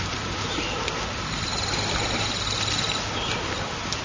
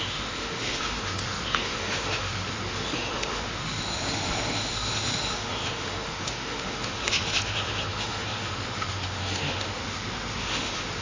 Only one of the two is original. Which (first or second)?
first